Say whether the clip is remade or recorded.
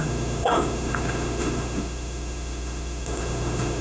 remade